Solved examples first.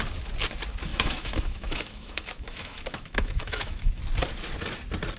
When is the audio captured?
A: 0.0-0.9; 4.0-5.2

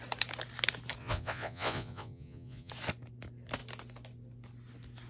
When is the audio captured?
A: 0.0-1.0; 2.7-5.1

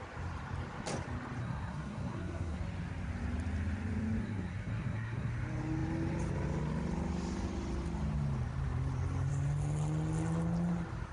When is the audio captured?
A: 0.0-1.4; 2.6-4.2; 5.3-11.1

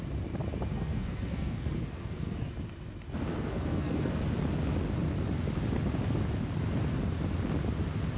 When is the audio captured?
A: 0.0-0.7; 2.5-3.3; 4.2-8.2

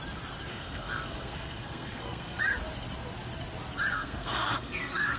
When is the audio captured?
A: 0.0-0.5; 2.4-3.9

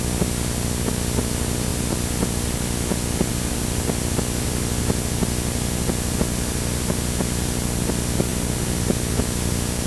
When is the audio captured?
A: 0.0-9.9

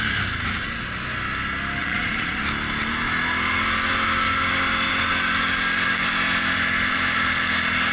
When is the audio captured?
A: 0.0-1.8; 2.4-7.9